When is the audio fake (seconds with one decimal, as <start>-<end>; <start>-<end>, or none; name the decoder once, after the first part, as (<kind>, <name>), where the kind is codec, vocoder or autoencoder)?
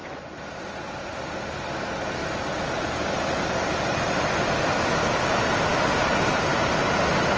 none